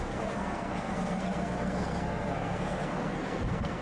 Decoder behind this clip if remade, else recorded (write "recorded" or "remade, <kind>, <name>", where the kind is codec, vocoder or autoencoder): remade, codec, SNAC